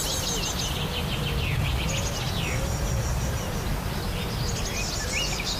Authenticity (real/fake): real